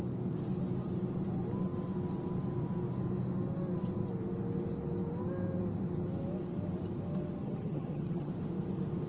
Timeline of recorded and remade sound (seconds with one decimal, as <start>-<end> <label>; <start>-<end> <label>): 0.0-7.4 recorded; 7.4-8.3 remade; 8.3-9.1 recorded